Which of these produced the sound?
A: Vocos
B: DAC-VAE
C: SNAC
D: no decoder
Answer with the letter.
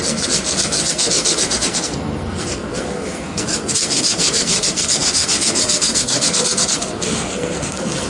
C